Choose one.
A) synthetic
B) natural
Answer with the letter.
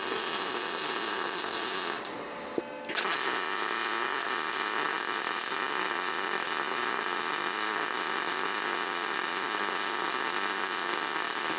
B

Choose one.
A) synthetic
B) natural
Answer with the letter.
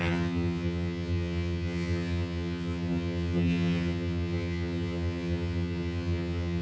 A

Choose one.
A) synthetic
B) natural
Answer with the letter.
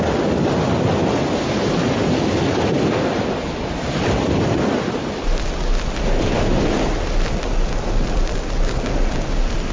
B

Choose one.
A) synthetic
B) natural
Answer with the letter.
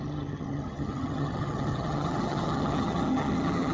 A